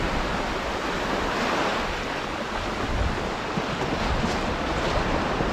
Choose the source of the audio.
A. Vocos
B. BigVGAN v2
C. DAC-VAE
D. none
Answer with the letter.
D